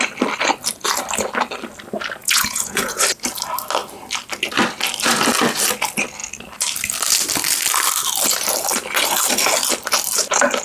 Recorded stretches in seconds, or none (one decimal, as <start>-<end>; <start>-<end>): 0.0-2.2; 3.0-10.6